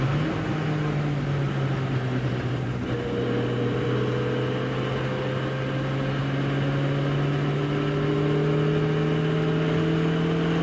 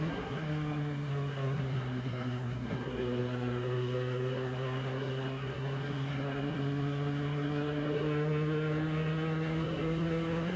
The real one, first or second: first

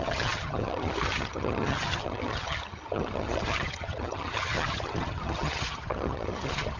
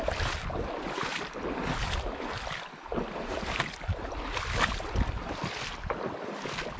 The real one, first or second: second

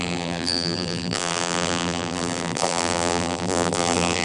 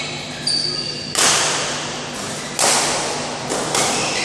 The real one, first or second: second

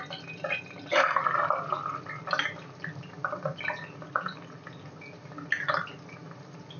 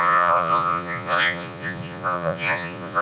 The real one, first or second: first